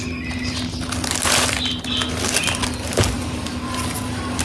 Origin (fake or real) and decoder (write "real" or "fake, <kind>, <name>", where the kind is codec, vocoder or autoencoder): real